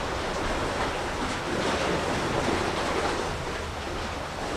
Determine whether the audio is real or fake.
real